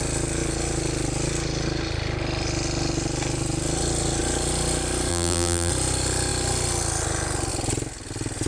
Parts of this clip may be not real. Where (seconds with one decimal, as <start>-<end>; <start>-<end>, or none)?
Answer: 5.1-5.7